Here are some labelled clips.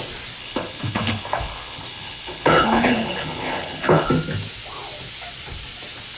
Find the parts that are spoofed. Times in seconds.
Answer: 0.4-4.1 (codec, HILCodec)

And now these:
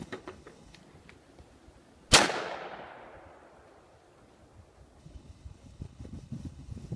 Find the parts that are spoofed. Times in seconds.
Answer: 0.0-0.8 (codec, HILCodec); 5.0-7.0

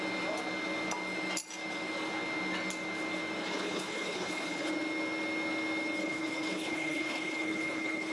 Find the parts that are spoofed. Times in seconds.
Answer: 3.4-4.7 (codec, HILCodec); 6.0-8.1

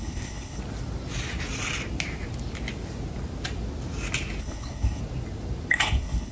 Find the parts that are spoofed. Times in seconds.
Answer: 0.0-0.6 (codec, HILCodec); 4.4-5.0; 5.7-6.3

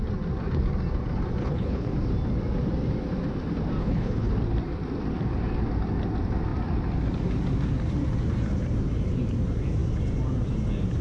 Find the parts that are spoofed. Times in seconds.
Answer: 1.4-1.9 (codec, HILCodec); 3.8-4.3

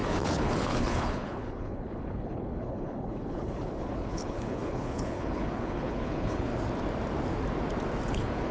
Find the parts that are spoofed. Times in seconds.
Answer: 0.0-6.5 (codec, HILCodec); 8.1-8.5